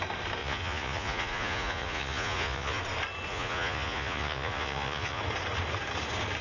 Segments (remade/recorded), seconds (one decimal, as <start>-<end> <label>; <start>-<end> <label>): 0.0-0.4 recorded; 0.4-2.8 remade; 2.8-3.3 recorded; 3.3-5.2 remade; 5.2-6.4 recorded